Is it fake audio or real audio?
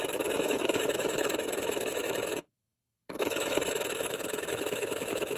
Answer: fake